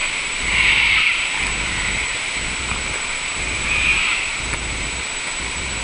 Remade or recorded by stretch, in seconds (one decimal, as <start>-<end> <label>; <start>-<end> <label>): 0.0-5.8 remade